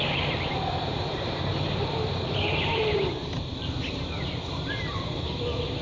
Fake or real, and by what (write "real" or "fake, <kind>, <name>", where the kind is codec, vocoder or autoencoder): fake, vocoder, BigVGAN v2